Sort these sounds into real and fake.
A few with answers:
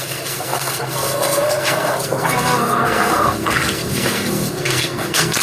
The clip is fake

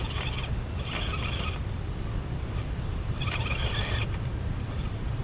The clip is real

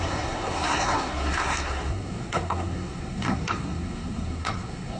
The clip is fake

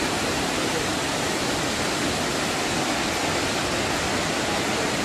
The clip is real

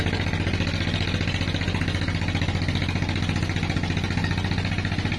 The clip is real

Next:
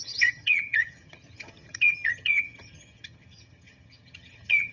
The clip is fake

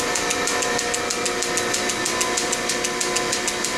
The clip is real